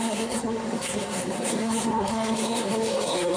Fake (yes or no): yes